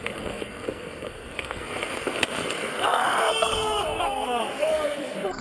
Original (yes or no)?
no